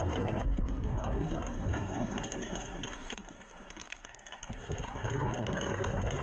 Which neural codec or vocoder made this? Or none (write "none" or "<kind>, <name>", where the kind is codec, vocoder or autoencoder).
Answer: codec, SNAC